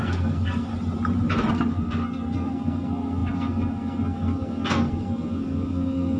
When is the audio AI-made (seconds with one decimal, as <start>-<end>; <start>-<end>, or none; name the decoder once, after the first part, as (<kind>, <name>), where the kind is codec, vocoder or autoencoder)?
0.0-0.7 (codec, SNAC); 1.5-6.2